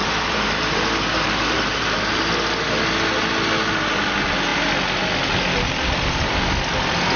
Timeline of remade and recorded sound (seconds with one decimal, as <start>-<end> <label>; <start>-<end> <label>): 0.0-2.2 remade; 2.2-7.2 recorded